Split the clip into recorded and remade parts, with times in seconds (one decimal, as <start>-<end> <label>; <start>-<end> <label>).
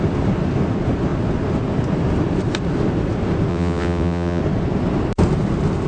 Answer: 0.0-3.5 recorded; 3.5-4.4 remade; 4.4-5.9 recorded